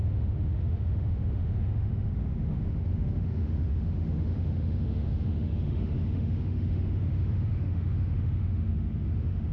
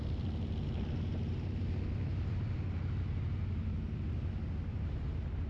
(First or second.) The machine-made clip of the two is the first